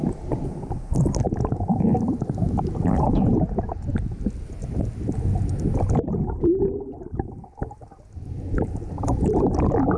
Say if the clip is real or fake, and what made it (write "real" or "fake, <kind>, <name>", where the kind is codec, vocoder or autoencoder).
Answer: real